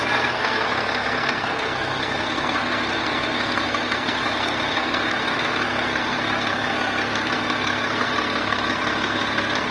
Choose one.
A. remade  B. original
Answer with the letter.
A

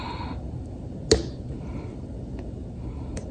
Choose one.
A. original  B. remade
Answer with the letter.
A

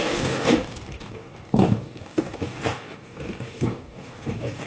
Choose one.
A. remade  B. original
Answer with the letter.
A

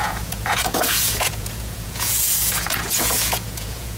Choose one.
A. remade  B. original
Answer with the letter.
A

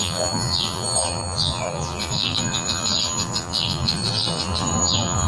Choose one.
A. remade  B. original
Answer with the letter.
A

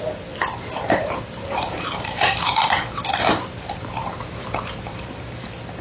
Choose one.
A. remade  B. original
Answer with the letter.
A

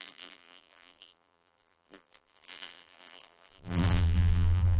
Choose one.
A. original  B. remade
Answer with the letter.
B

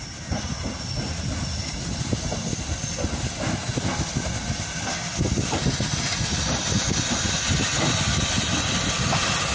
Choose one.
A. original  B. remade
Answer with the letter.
A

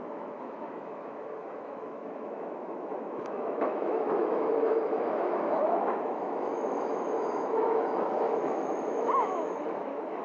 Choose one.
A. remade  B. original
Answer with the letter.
A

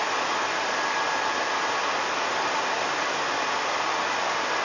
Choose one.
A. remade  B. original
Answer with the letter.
A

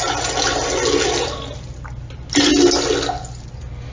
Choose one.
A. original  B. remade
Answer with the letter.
A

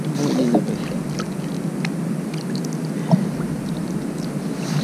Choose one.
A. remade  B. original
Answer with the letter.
B